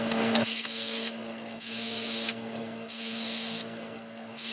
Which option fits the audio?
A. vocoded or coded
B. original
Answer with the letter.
A